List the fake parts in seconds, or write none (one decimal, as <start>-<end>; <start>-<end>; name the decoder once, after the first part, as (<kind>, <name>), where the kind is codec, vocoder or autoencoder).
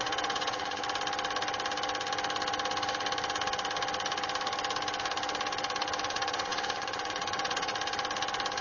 0.0-0.8 (vocoder, WaveNeXt); 6.0-7.7